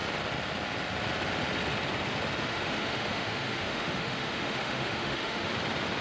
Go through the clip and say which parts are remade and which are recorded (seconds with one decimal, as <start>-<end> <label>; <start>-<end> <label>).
0.0-2.5 recorded; 2.5-5.5 remade; 5.5-6.0 recorded